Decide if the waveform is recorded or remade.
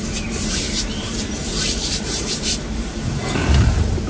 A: remade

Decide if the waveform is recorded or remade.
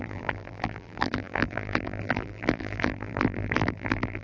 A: remade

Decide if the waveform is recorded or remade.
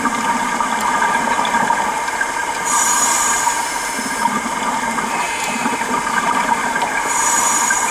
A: remade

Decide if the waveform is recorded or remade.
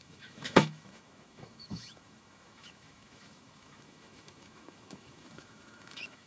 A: remade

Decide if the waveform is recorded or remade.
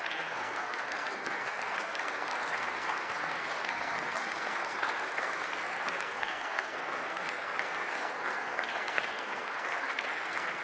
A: remade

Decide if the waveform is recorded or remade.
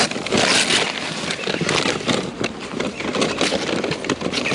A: recorded